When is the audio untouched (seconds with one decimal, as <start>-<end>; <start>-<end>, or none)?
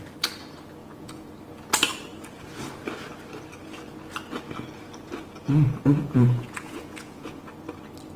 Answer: 0.0-0.8; 1.4-6.0; 7.5-8.2